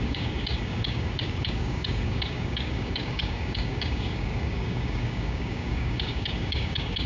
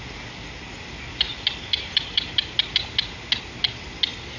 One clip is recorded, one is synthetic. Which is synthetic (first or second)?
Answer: first